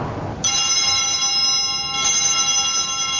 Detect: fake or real real